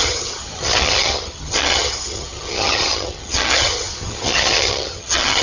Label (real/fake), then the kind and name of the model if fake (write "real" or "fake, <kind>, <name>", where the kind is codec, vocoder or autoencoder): fake, vocoder, HiFi-GAN